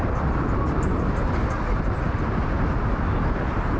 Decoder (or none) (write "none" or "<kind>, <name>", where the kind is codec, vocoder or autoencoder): none